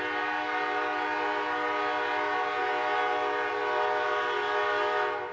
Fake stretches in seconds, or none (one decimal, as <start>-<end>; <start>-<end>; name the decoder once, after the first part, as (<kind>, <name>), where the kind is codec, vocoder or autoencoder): none